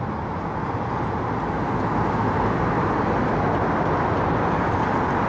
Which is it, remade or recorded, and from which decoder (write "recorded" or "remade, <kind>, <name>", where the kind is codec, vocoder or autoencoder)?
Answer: recorded